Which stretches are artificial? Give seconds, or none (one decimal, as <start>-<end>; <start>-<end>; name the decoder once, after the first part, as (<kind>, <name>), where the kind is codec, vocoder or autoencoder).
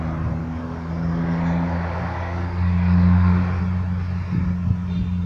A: 0.4-3.6 (codec, DAC)